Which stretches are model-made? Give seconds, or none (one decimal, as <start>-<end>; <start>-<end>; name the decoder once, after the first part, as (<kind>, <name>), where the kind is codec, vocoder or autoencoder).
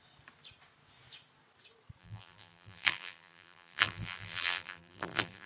2.0-5.5 (vocoder, BigVGAN v2)